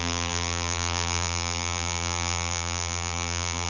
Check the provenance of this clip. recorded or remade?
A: remade